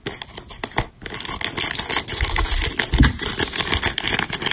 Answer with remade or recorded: recorded